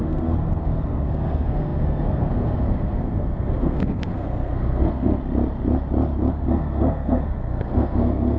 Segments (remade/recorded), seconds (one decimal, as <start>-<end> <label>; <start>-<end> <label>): 0.0-5.2 remade; 5.2-6.3 recorded; 6.3-8.4 remade